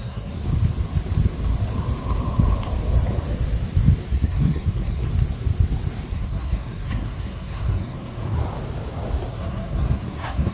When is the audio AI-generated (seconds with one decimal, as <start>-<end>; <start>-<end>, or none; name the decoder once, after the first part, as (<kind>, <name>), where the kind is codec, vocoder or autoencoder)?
0.0-0.4 (codec, SNAC); 4.1-5.1; 6.1-8.4; 9.3-10.5